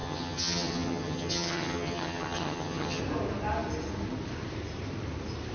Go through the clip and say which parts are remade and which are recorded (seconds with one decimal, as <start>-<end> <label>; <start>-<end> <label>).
0.0-3.0 remade; 3.0-5.5 recorded